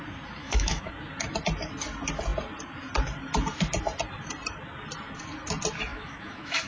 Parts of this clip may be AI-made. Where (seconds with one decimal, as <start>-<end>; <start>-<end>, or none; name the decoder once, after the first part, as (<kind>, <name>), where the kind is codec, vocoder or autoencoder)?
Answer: 0.4-0.9 (autoencoder, DAC-VAE); 5.9-6.7